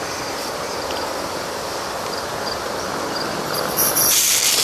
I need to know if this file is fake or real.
real